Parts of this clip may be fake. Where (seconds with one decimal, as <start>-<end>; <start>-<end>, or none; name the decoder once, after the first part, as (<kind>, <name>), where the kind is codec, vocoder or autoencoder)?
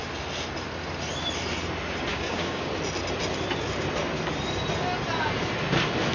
2.1-2.7 (codec, DAC)